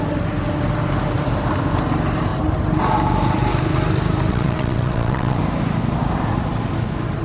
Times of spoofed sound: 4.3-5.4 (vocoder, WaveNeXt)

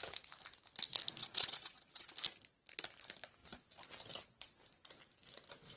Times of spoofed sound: 1.2-2.1 (vocoder, WaveNeXt)

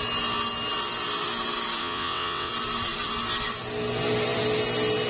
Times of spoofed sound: 1.8-2.5 (vocoder, WaveNeXt)